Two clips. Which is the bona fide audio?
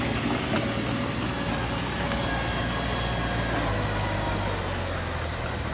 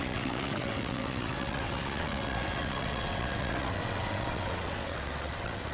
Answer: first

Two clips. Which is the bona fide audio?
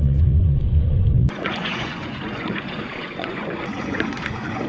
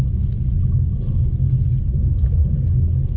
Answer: second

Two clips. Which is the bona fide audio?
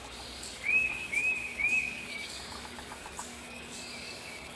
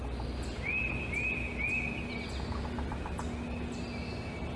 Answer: second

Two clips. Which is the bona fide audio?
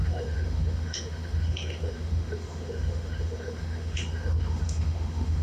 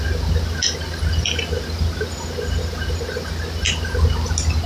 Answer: second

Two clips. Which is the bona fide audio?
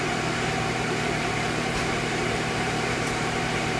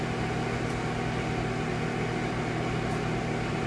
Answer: second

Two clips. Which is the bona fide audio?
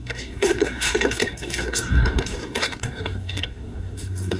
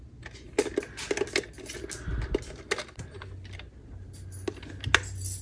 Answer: second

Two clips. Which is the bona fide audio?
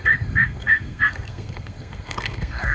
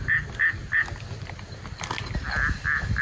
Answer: second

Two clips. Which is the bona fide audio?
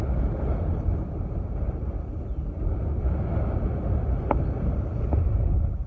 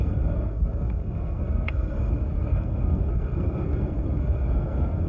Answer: first